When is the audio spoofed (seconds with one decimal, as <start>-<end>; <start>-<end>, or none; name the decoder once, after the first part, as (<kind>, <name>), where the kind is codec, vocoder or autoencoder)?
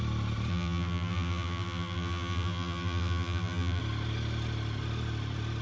0.5-3.8 (vocoder, BigVGAN v2)